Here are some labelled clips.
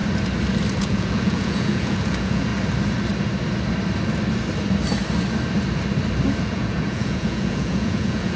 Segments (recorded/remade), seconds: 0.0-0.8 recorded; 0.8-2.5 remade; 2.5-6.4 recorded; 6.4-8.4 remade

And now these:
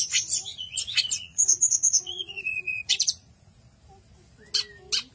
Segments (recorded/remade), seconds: 0.0-0.5 recorded; 0.5-3.6 remade; 3.6-5.1 recorded

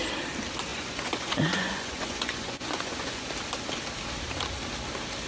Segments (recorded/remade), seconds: 0.0-0.7 recorded; 0.7-3.3 remade; 3.3-5.3 recorded

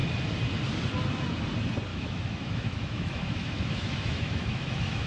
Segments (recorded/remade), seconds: 0.0-1.9 recorded; 1.9-5.1 remade

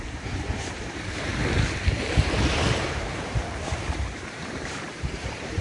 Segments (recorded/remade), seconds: 0.0-1.3 remade; 1.3-2.0 recorded; 2.0-5.6 remade

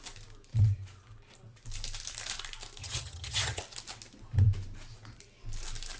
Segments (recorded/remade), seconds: 0.0-2.8 recorded; 2.8-3.6 remade; 3.6-6.0 recorded

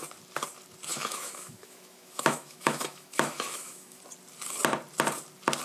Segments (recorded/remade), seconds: 0.0-0.9 recorded; 0.9-4.0 remade; 4.0-5.6 recorded